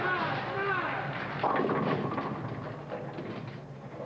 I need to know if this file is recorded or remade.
recorded